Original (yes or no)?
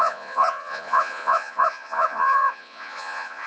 no